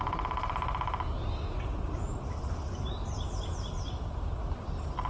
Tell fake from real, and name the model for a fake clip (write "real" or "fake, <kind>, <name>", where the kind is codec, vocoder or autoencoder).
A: real